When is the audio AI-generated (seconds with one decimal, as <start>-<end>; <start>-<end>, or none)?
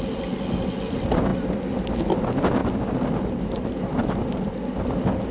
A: none